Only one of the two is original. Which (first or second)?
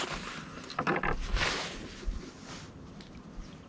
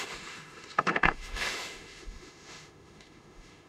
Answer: first